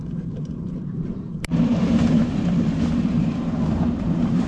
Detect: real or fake fake